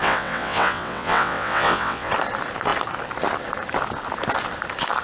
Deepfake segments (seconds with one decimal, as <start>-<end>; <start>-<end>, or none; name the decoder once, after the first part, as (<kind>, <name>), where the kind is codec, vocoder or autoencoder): 0.0-2.1 (vocoder, WaveNeXt)